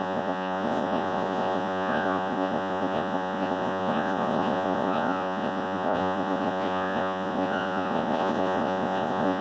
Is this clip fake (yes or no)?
yes